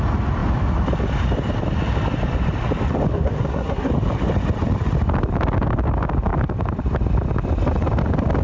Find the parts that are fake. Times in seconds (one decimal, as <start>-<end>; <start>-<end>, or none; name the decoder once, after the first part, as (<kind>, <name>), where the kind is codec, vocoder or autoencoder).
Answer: 3.1-3.9 (codec, SNAC)